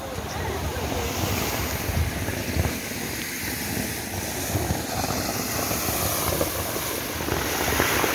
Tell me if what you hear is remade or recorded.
recorded